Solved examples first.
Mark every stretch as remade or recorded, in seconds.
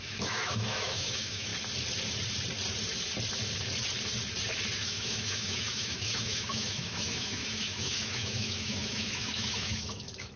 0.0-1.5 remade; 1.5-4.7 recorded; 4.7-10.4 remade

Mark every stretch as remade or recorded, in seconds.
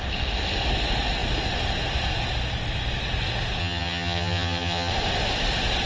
0.0-3.6 recorded; 3.6-4.9 remade; 4.9-5.9 recorded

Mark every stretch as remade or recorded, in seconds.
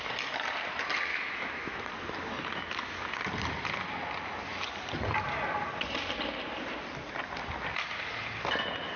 0.0-1.1 recorded; 1.1-1.8 remade; 1.8-9.0 recorded